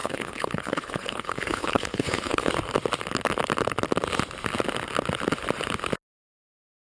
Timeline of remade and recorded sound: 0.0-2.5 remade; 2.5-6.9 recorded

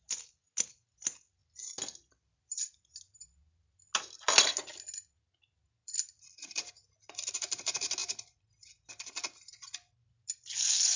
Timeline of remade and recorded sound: 0.0-5.8 recorded; 5.8-6.7 remade; 6.7-8.0 recorded; 8.0-10.1 remade; 10.1-11.0 recorded

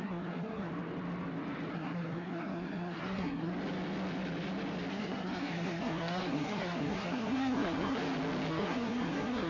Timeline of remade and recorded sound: 0.0-0.7 remade; 0.7-1.7 recorded; 1.7-3.5 remade; 3.5-4.9 recorded; 4.9-8.0 remade; 8.0-8.5 recorded; 8.5-9.5 remade

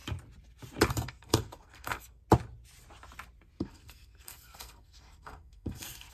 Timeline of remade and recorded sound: 0.0-0.9 recorded; 0.9-2.2 remade; 2.2-3.6 recorded; 3.6-6.1 remade

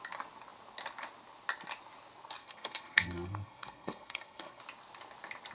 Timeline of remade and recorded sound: 0.0-2.4 recorded; 2.4-4.6 remade; 4.6-5.5 recorded

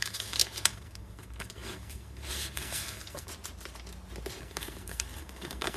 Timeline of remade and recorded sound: 0.0-3.3 remade; 3.3-4.4 recorded; 4.4-5.8 remade

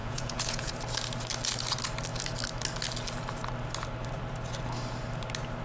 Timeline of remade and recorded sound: 0.0-0.7 remade; 0.7-5.6 recorded

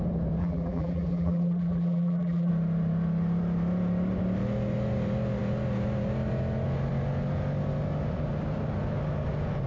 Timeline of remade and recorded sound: 0.0-0.4 recorded; 0.4-2.5 remade; 2.5-9.7 recorded